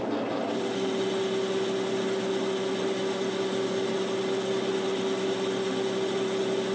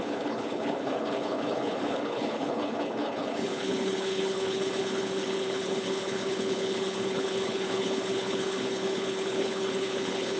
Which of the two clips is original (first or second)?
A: first